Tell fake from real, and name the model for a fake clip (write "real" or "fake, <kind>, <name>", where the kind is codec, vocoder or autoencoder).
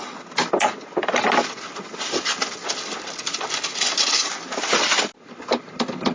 real